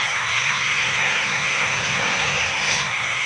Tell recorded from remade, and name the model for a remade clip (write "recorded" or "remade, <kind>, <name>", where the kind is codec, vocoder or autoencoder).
remade, codec, SNAC